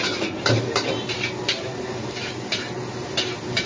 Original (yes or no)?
yes